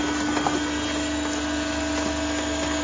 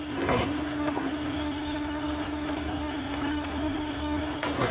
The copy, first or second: second